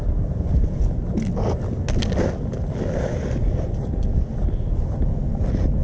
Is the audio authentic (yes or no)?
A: yes